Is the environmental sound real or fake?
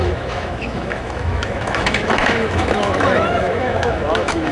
fake